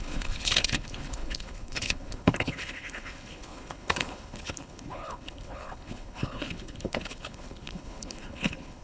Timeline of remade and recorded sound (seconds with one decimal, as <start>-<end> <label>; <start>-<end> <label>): 0.0-8.8 remade